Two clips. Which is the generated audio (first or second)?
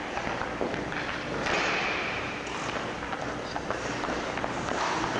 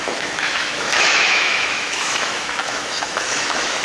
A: second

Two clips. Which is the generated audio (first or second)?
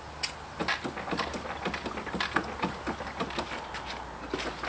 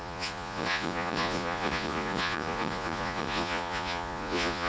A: second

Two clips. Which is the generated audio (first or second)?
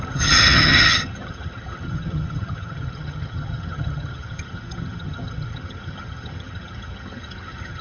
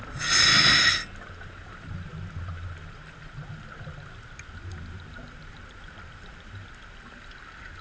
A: first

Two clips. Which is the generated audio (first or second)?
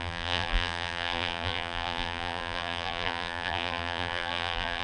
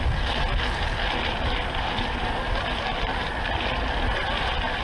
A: first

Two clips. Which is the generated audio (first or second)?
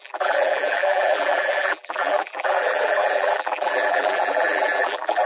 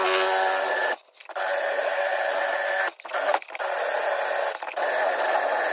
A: first